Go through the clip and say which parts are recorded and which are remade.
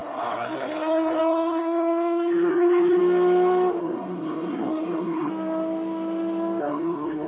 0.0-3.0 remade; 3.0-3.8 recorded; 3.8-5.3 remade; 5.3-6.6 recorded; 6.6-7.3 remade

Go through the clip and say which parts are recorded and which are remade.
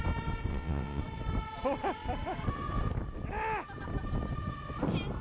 0.0-0.5 recorded; 0.5-1.0 remade; 1.0-5.2 recorded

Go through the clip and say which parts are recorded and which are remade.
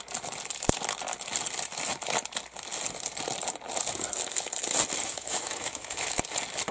0.0-5.0 recorded; 5.0-6.2 remade; 6.2-6.7 recorded